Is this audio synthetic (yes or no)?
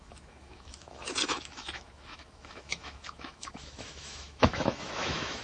yes